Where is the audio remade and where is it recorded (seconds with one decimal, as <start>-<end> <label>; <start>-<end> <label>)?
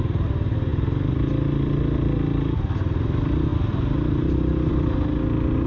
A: 0.0-5.7 recorded